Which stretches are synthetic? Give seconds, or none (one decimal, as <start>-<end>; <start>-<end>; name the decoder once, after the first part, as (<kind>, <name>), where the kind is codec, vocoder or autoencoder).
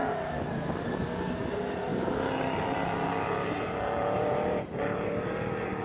0.9-1.9 (vocoder, BigVGAN v2)